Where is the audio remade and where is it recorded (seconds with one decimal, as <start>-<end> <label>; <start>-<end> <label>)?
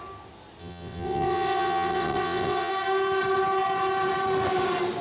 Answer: 0.0-0.6 recorded; 0.6-2.7 remade; 2.7-5.0 recorded